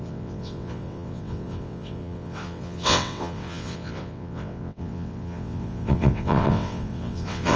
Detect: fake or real fake